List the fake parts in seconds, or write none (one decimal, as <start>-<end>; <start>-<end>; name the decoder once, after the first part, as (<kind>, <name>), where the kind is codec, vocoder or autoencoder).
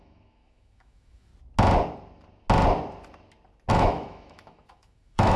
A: 0.0-1.3 (autoencoder, DAC-VAE); 3.7-5.4